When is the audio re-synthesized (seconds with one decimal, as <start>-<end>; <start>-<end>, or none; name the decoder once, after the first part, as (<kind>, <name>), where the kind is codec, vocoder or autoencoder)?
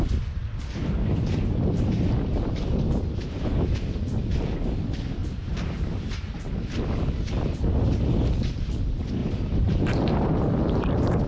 5.2-6.4 (vocoder, BigVGAN v2); 9.2-10.3